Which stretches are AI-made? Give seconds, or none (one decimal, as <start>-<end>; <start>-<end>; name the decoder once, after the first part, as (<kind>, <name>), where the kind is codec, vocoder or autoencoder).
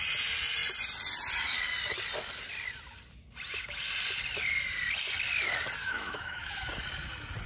5.8-6.6 (autoencoder, DAC-VAE)